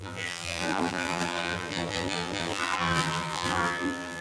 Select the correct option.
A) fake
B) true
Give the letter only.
A